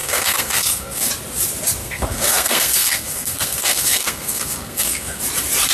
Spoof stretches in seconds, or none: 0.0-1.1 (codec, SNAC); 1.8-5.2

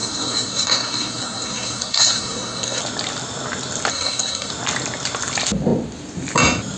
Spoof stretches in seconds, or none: 0.0-2.8 (codec, SNAC); 3.9-4.5

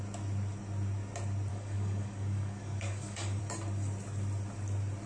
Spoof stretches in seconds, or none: 1.5-3.4 (codec, DAC)